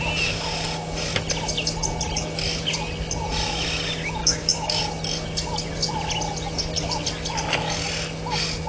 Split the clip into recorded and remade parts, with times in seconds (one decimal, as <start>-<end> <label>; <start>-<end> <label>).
0.0-4.2 recorded; 4.2-4.8 remade; 4.8-8.7 recorded